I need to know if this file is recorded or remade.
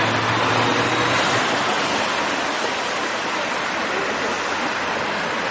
recorded